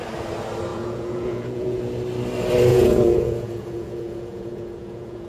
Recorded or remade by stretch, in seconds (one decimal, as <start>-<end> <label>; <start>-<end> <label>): 0.0-0.7 recorded; 0.7-1.8 remade; 1.8-2.7 recorded; 2.7-5.3 remade